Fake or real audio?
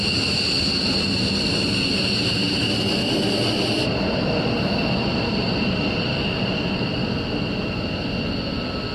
real